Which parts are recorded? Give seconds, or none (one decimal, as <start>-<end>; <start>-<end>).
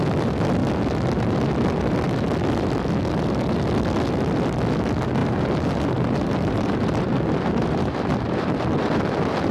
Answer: 0.0-5.2; 8.6-9.5